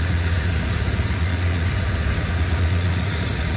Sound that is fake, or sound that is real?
fake